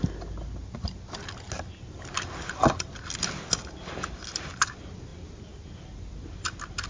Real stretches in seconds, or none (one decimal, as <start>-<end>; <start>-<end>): 0.0-6.9